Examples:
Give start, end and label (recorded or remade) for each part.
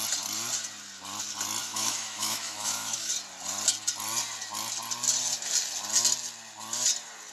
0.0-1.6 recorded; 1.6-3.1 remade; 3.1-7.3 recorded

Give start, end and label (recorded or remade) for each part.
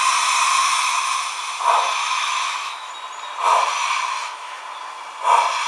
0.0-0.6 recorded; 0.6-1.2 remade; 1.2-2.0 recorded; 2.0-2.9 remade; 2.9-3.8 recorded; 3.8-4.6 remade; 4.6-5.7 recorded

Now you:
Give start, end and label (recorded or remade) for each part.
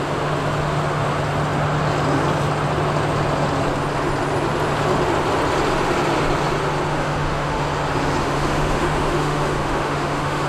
0.0-6.9 recorded; 6.9-7.6 remade; 7.6-8.2 recorded; 8.2-10.5 remade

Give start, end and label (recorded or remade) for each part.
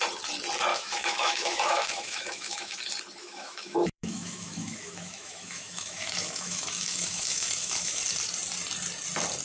0.0-0.7 recorded; 0.7-2.8 remade; 2.8-3.2 recorded; 3.2-8.0 remade; 8.0-9.4 recorded